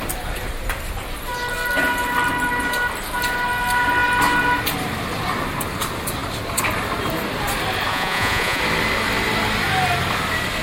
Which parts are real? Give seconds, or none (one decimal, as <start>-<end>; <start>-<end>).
0.0-7.9; 8.6-10.6